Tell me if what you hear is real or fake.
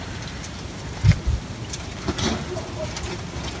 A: real